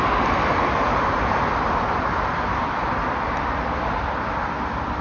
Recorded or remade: recorded